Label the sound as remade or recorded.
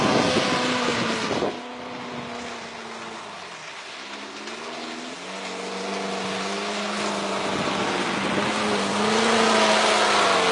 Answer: recorded